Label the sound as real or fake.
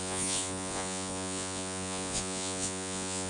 fake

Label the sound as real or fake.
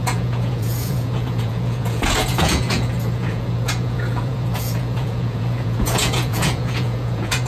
fake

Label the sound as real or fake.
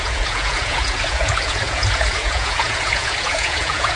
fake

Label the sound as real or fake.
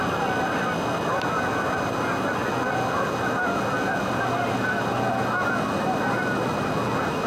real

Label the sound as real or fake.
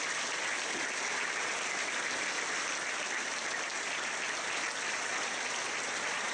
real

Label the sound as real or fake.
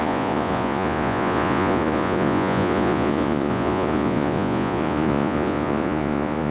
fake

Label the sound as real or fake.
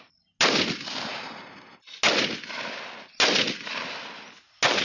real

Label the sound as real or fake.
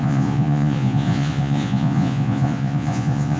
fake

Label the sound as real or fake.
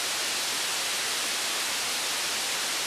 real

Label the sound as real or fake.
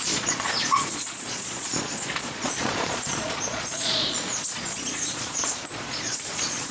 fake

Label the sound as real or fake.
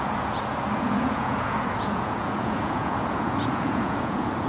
fake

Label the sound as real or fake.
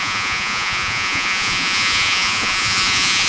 fake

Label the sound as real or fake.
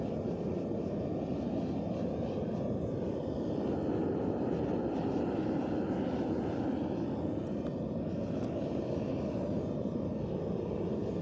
real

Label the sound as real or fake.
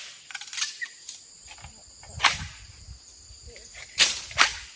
real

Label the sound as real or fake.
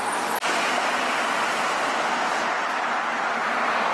real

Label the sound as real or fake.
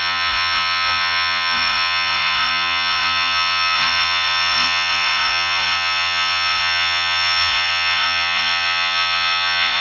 fake